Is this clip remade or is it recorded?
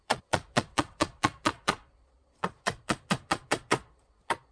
remade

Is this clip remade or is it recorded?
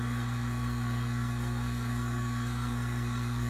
remade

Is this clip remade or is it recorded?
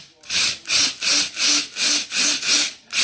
recorded